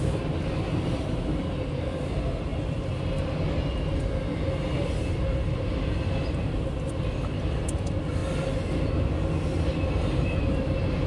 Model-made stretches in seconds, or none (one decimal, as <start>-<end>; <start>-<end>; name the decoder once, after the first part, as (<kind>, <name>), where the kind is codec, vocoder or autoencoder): none